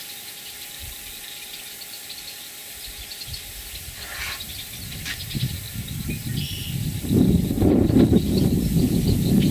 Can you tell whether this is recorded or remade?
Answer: recorded